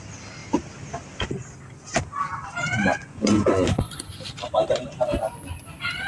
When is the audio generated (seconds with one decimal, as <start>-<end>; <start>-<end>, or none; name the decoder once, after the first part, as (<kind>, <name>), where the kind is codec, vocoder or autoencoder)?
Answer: 3.0-4.1 (vocoder, Vocos)